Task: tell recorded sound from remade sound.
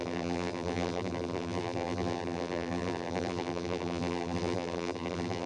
remade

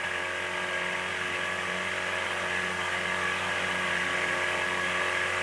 recorded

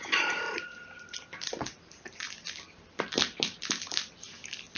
recorded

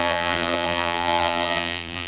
remade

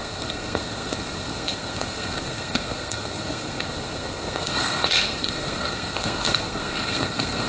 remade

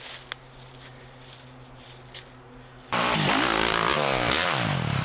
recorded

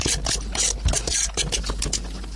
recorded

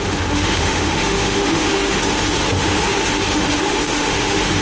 remade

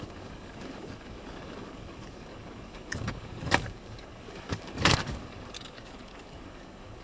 remade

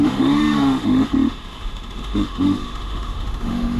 remade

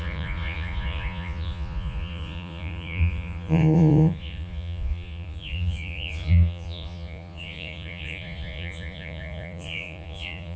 remade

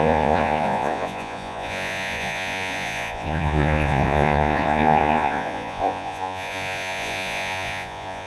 remade